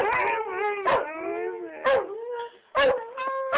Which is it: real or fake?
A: real